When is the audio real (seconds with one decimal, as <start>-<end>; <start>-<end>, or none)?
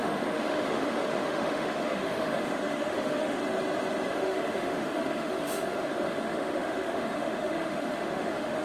3.4-4.1